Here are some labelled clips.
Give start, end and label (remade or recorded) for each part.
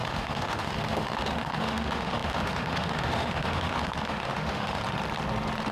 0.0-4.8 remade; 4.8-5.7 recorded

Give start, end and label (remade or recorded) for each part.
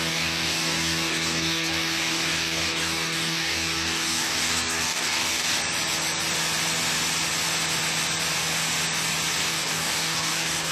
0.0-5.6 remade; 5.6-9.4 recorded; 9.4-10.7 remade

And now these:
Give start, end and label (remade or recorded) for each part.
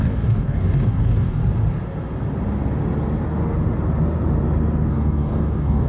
0.0-1.4 remade; 1.4-4.9 recorded; 4.9-5.9 remade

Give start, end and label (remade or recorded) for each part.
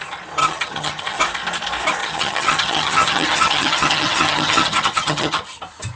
0.0-0.4 recorded; 0.4-1.2 remade; 1.2-2.0 recorded; 2.0-5.6 remade; 5.6-6.0 recorded